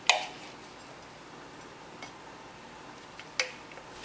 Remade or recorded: recorded